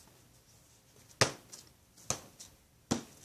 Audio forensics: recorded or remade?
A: recorded